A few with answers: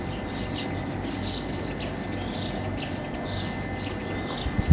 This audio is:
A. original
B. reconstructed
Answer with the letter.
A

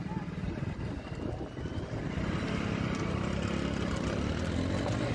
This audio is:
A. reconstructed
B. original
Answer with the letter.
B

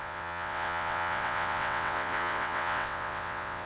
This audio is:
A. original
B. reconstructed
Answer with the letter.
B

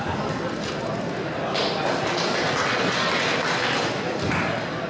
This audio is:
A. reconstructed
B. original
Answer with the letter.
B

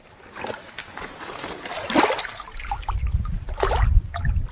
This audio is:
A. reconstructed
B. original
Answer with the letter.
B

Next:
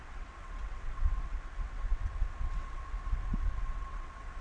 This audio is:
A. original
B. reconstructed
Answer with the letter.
B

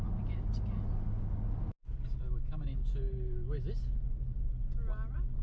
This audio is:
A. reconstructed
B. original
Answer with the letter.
B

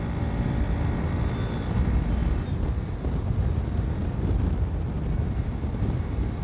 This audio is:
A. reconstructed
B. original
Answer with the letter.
B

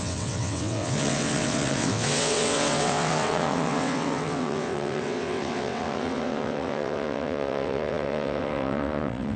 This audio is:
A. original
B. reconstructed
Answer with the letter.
B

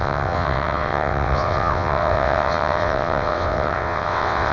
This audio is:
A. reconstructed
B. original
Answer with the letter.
A